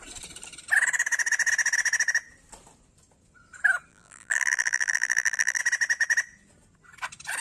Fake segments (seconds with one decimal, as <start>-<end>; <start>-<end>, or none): 3.9-5.6